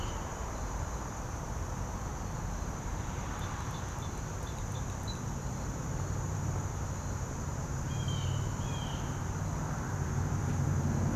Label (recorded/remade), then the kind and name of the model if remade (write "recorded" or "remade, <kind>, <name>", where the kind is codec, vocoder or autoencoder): remade, vocoder, BigVGAN v2